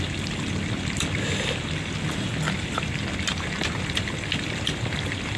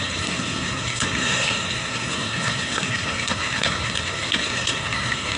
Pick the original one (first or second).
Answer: first